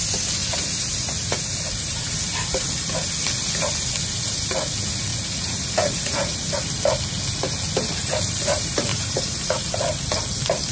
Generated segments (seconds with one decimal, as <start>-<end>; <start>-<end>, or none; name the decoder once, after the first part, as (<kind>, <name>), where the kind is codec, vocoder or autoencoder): 0.4-1.4 (vocoder, Vocos); 5.1-6.5; 8.9-9.6